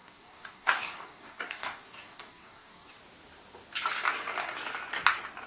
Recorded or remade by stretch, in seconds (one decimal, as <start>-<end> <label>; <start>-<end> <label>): 0.0-3.0 remade; 3.0-5.5 recorded